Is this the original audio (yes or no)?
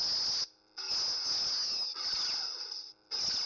yes